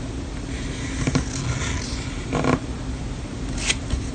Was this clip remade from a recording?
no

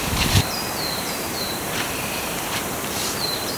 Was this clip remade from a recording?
yes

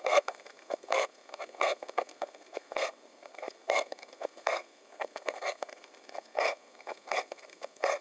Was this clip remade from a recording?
yes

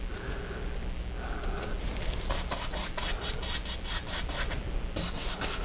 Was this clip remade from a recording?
no